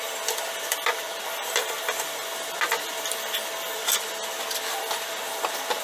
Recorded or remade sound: recorded